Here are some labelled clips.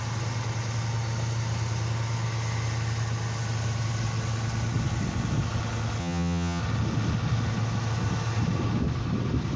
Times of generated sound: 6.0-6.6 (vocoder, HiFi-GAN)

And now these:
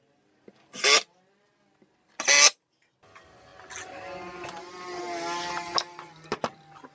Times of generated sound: none

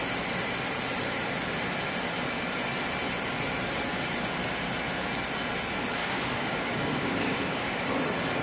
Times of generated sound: 6.0-7.9 (codec, DAC)